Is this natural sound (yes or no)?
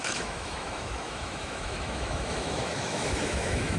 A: no